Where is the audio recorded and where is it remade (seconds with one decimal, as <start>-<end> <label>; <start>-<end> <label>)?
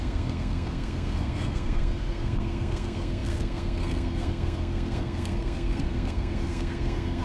0.0-7.2 remade